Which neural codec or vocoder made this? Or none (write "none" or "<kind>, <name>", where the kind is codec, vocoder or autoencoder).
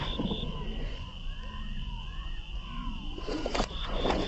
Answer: vocoder, Vocos